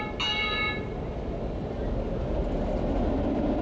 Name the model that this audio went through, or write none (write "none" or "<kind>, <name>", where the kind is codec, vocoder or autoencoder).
none